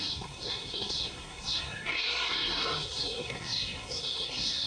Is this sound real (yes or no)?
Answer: no